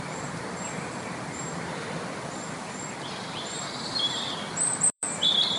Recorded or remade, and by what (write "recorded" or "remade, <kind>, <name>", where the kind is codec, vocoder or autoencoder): remade, vocoder, BigVGAN v2